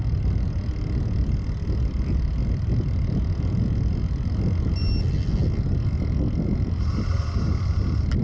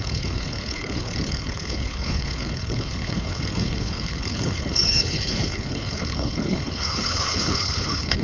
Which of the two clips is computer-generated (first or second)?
second